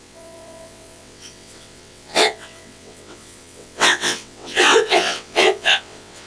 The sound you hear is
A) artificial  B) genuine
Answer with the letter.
A